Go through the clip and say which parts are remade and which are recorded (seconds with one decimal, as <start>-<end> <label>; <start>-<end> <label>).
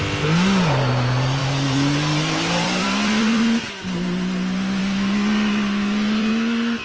0.0-1.4 recorded; 1.4-3.7 remade; 3.7-4.8 recorded; 4.8-6.3 remade; 6.3-6.8 recorded